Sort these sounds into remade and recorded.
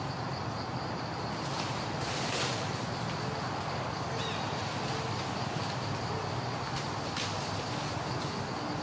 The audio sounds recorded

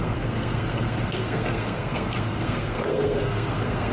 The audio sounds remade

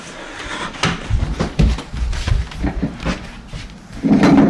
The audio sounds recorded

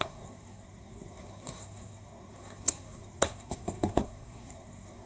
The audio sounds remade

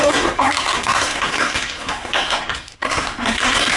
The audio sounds remade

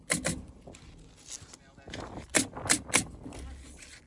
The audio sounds recorded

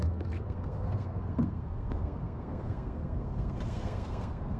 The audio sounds remade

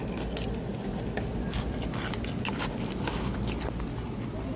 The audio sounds recorded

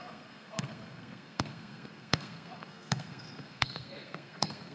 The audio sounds remade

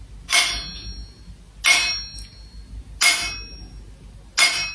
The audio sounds recorded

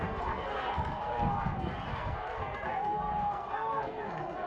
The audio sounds remade